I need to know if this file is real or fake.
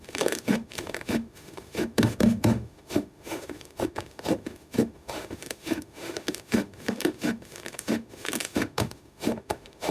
fake